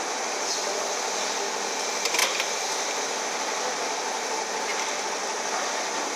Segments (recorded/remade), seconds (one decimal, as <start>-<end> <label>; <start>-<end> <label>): 0.0-6.2 recorded